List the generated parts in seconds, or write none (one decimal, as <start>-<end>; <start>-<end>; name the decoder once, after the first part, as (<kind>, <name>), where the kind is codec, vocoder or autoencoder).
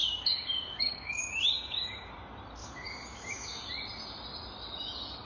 0.0-2.1 (codec, DAC); 2.6-3.7